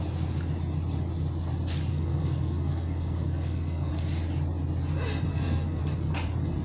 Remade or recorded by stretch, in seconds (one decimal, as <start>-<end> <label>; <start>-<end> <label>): 0.0-1.9 recorded; 1.9-3.9 remade; 3.9-5.3 recorded; 5.3-5.8 remade; 5.8-6.6 recorded